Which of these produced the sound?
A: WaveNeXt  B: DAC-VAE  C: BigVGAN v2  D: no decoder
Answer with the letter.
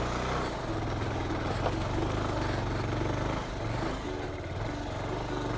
D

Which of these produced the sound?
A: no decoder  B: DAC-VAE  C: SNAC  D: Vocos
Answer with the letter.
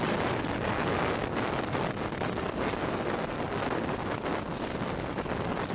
A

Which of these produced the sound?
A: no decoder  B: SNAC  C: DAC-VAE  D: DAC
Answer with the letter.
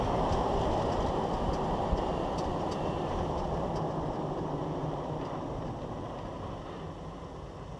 A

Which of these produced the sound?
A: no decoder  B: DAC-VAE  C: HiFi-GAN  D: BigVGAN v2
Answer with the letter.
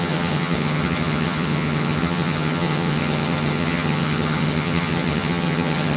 C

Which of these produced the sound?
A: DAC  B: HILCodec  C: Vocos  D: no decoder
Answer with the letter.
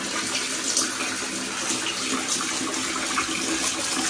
D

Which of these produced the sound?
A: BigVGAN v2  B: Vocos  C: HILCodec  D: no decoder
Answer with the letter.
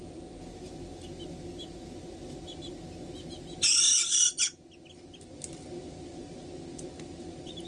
D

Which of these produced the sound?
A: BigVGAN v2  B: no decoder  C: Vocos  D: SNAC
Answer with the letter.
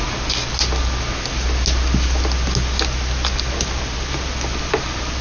B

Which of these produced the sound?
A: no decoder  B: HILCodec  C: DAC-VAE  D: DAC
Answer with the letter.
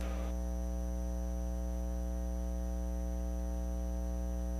A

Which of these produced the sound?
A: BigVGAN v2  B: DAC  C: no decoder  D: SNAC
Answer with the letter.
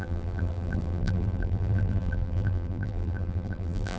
A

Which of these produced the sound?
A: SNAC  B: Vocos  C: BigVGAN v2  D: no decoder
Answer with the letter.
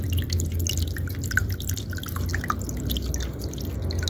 D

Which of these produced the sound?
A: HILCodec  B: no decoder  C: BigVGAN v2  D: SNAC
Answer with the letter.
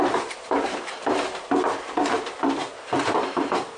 C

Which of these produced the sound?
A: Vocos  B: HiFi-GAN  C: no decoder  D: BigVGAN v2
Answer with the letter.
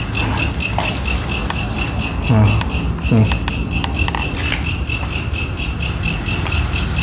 C